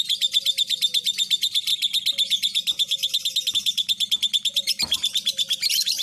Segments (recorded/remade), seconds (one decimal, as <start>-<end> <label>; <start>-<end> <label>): 0.0-1.7 remade; 1.7-3.5 recorded; 3.5-6.0 remade